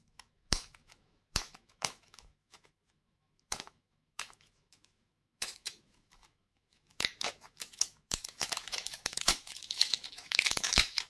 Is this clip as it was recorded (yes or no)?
no